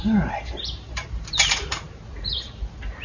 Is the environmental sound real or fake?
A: fake